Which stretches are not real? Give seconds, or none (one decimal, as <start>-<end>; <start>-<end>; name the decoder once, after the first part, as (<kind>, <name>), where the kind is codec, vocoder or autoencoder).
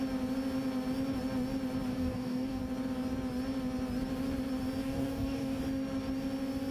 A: 1.9-2.6 (codec, DAC); 4.8-5.6